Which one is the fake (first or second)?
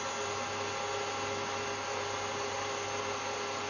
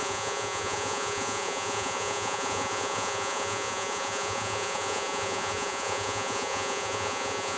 second